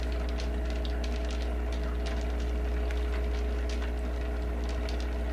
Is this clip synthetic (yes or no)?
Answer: no